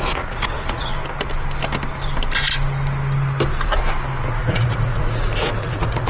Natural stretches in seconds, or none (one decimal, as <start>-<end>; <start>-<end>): 0.9-4.3

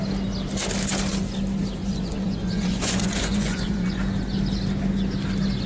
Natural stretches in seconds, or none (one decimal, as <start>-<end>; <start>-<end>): 0.0-1.8; 4.0-5.7

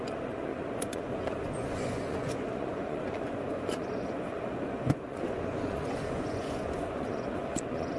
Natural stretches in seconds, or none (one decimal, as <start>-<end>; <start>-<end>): none

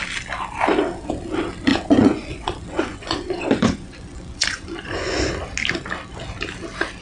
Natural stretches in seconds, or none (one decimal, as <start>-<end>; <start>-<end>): 0.0-1.7; 5.3-7.0

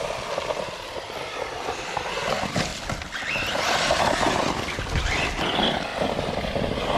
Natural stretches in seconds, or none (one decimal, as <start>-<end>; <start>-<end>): 0.0-7.0

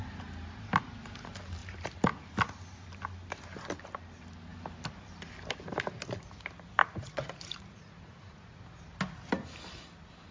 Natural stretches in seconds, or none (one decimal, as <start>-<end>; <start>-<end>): 0.0-6.8; 8.6-10.3